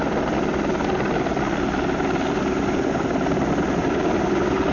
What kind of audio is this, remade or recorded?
recorded